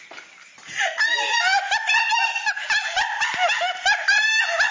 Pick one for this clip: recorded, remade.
recorded